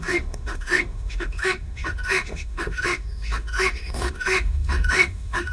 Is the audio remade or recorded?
remade